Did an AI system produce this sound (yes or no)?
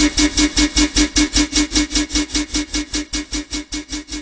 no